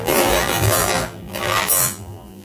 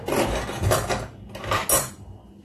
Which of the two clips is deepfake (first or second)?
first